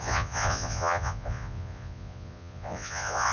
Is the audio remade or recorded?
remade